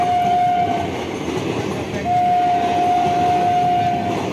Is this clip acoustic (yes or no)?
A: yes